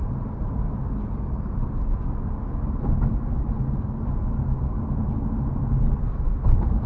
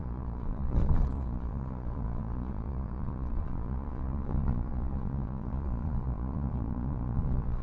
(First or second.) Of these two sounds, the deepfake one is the second